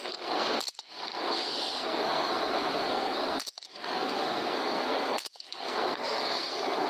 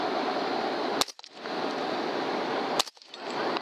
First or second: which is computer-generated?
first